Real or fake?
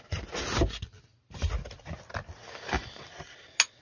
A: real